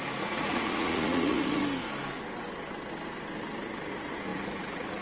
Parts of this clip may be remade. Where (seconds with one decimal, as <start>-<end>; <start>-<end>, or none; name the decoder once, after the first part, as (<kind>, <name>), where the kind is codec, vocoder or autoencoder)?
0.0-1.6 (vocoder, Vocos); 3.9-5.0